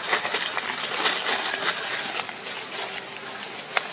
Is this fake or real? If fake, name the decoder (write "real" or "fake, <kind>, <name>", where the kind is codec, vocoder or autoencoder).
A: real